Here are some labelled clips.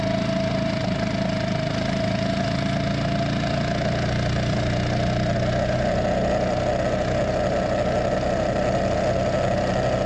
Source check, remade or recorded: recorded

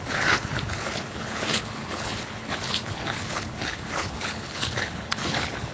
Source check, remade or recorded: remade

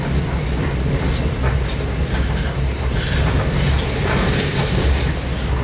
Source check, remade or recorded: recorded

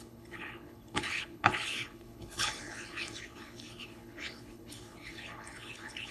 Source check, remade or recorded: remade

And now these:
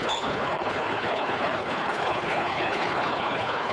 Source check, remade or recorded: remade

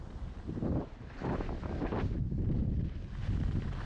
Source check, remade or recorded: recorded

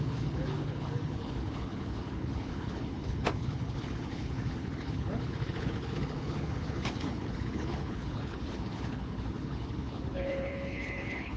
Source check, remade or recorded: remade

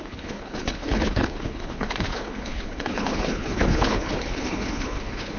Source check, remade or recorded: remade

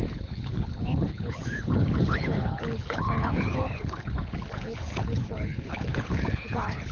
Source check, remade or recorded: remade